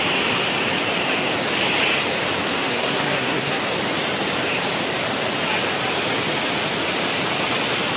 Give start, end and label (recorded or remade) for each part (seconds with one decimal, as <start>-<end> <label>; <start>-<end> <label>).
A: 0.0-2.6 recorded; 2.6-3.6 remade; 3.6-8.0 recorded